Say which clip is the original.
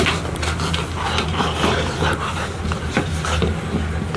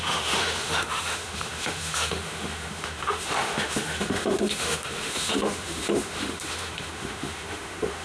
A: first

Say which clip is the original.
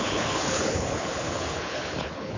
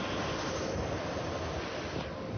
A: second